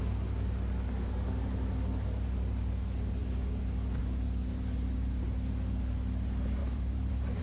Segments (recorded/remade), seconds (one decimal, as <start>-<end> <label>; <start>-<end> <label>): 0.0-6.6 recorded; 6.6-7.4 remade